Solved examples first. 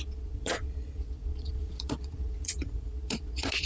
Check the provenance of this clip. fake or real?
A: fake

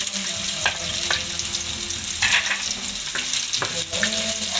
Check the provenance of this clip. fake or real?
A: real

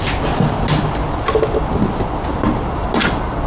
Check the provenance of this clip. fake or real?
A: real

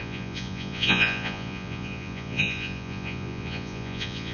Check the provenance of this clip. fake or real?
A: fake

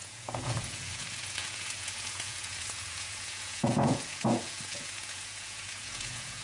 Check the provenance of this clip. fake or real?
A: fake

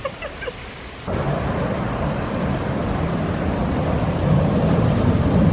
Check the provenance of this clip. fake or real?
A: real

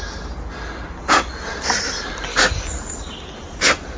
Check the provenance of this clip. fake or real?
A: real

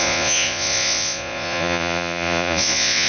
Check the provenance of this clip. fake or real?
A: fake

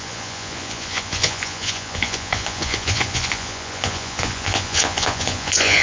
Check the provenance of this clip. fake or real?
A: fake